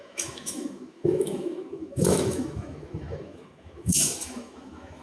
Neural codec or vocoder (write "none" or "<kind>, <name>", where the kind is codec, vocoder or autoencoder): autoencoder, DAC-VAE